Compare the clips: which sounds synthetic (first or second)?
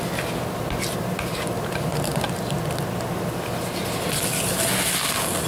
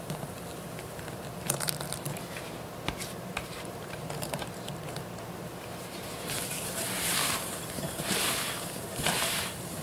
second